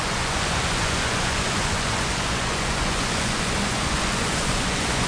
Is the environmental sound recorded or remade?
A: remade